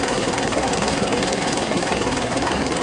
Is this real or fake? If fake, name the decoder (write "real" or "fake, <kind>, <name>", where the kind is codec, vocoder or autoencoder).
fake, codec, SNAC